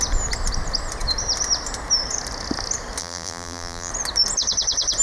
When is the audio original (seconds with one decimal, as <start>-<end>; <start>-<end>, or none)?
0.0-3.0; 3.9-5.0